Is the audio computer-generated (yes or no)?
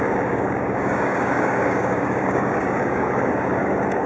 yes